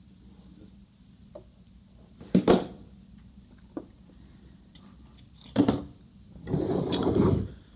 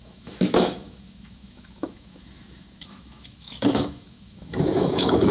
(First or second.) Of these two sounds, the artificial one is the second